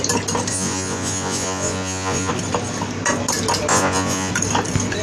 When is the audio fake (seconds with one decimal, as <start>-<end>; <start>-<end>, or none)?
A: 0.5-2.3; 3.7-4.3